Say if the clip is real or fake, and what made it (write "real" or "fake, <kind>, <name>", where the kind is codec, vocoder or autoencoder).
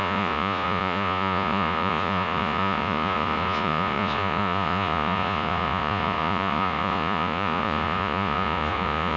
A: fake, vocoder, Vocos